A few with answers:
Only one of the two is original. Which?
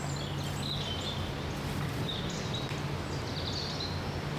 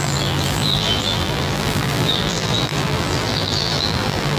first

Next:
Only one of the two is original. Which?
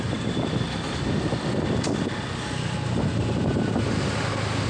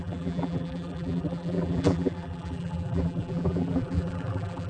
first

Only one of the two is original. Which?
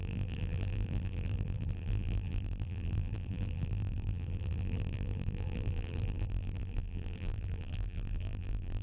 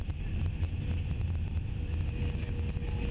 second